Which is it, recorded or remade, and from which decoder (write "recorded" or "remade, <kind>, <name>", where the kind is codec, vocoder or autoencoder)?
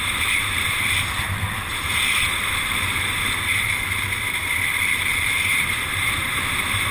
remade, vocoder, BigVGAN v2